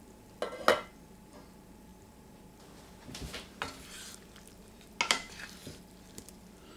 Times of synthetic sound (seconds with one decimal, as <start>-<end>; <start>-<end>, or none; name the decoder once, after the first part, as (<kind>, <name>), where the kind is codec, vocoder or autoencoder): none